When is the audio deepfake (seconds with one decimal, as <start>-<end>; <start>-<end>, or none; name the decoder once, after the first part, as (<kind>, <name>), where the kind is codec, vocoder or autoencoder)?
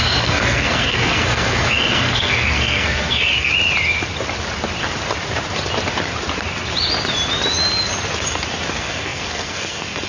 0.0-3.5 (codec, SNAC); 8.7-10.1